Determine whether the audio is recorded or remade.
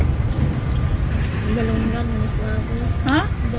recorded